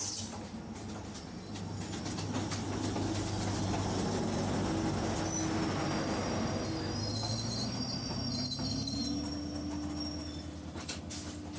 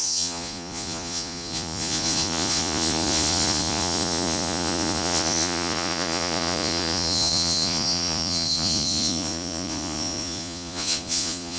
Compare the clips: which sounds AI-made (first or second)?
second